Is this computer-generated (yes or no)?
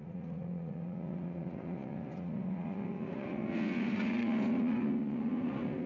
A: yes